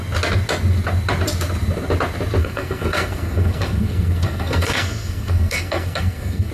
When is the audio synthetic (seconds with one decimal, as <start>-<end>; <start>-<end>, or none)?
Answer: 2.4-6.5